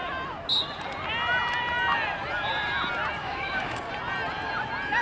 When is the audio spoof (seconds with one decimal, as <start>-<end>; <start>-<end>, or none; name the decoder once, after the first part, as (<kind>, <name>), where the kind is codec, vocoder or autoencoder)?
3.2-3.9 (codec, DAC)